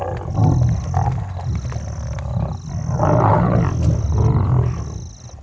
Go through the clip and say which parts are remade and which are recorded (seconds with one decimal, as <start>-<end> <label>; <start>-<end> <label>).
0.0-5.4 recorded